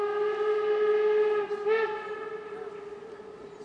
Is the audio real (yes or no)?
yes